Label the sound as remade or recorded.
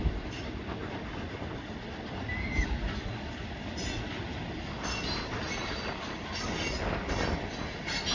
recorded